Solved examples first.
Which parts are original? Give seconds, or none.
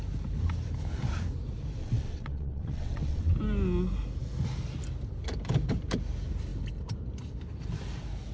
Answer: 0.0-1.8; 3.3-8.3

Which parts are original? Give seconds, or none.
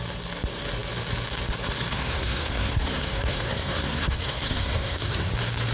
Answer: 0.0-1.9; 5.3-5.7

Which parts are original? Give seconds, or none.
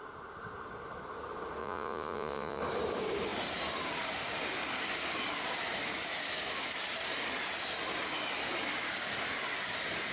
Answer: 0.0-1.6; 2.6-10.1